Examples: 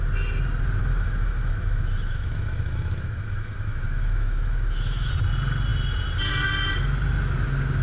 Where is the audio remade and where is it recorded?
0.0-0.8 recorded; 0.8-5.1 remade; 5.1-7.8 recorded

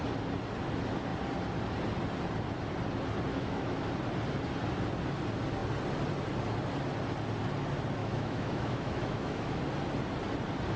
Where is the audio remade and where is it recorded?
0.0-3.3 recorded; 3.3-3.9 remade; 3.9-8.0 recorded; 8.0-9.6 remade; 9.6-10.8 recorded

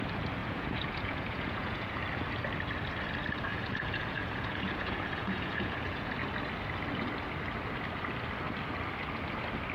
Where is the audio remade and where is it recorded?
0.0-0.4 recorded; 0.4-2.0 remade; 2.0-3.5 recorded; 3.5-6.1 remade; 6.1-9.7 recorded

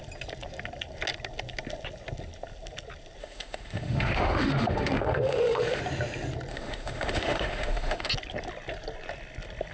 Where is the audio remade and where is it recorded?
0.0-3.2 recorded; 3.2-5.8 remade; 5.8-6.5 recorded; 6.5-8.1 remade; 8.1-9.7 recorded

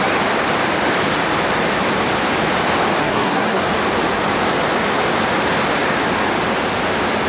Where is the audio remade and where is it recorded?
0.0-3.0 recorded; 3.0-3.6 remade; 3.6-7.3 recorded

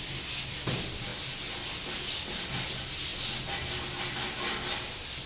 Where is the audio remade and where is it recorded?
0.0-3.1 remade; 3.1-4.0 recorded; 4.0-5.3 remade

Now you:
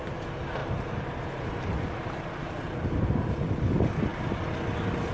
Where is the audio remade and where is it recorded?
0.0-0.6 recorded; 0.6-1.5 remade; 1.5-5.1 recorded

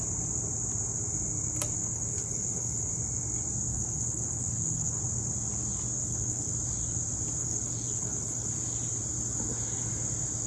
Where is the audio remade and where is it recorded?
0.0-1.8 recorded; 1.8-2.9 remade; 2.9-3.7 recorded; 3.7-5.0 remade; 5.0-6.0 recorded; 6.0-6.5 remade; 6.5-7.4 recorded; 7.4-8.5 remade; 8.5-10.5 recorded